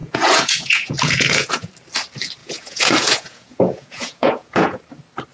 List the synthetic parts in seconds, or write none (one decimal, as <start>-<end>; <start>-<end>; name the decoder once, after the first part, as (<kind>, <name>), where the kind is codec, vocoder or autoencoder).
0.0-1.7 (vocoder, Vocos); 2.4-4.8